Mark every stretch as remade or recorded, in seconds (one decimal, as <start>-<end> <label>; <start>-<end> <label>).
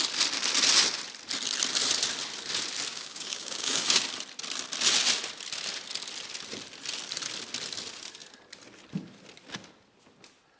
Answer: 0.0-2.9 recorded; 2.9-4.0 remade; 4.0-10.6 recorded